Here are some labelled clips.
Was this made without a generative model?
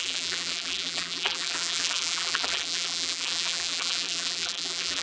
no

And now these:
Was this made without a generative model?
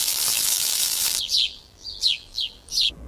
no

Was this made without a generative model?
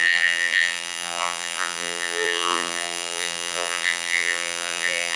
no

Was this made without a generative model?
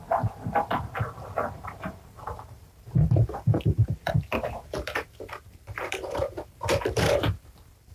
no